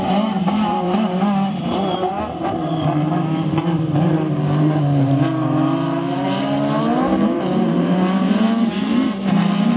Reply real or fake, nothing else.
fake